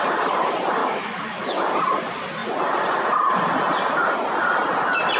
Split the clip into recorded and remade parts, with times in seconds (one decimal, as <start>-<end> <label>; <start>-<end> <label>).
0.0-0.8 recorded; 0.8-1.7 remade; 1.7-5.2 recorded